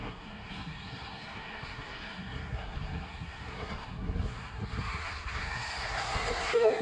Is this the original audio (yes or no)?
no